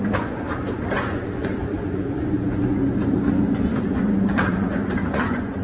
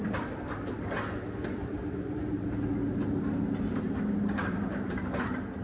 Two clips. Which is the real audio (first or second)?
second